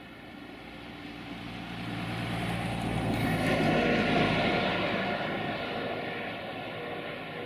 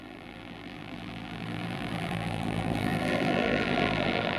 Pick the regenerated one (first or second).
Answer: second